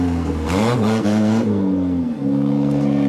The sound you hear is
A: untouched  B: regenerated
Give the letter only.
B